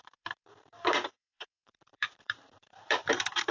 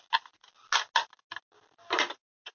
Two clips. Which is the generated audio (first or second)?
first